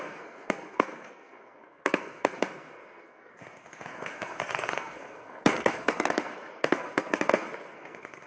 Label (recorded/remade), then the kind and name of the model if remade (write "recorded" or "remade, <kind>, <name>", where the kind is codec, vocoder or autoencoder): remade, codec, SNAC